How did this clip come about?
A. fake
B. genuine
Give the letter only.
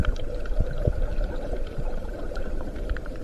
A